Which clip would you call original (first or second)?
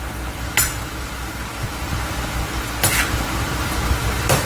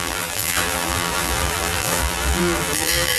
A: first